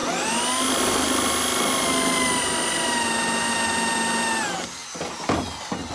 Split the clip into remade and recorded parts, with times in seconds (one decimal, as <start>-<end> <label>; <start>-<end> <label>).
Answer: 0.0-5.9 recorded